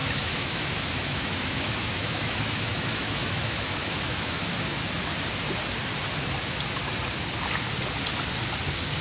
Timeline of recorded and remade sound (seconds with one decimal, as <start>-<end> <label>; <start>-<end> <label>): 0.0-5.0 remade; 5.0-9.0 recorded